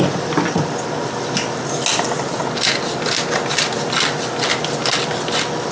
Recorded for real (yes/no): yes